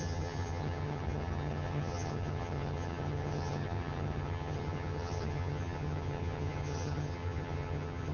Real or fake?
fake